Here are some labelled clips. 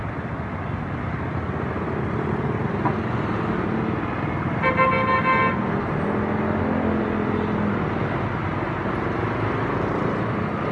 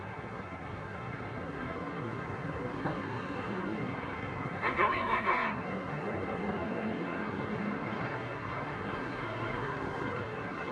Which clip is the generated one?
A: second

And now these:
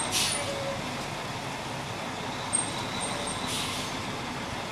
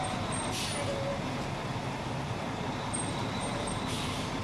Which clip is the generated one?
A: second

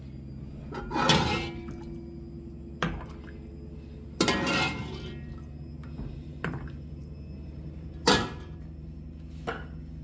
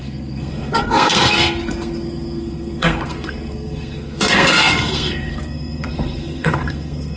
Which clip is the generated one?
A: second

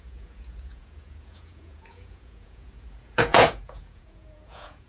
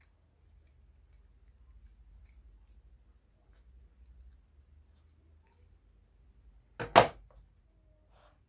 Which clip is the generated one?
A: first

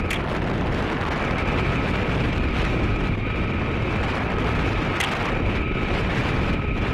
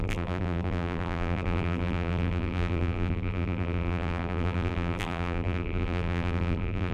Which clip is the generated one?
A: second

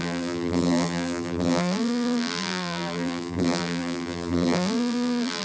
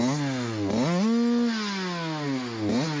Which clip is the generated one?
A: first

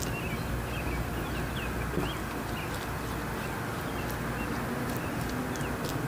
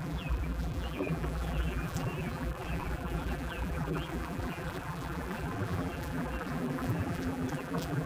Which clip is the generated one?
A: second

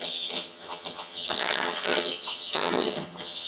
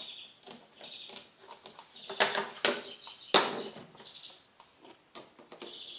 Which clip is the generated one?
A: first